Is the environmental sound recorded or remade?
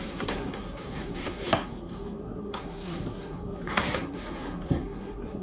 remade